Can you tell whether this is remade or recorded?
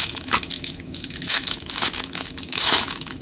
remade